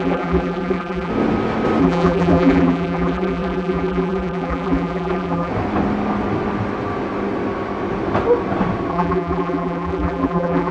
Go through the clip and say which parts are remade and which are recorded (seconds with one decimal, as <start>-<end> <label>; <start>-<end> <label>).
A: 0.0-1.1 remade; 1.1-1.8 recorded; 1.8-5.5 remade; 5.5-8.9 recorded; 8.9-10.7 remade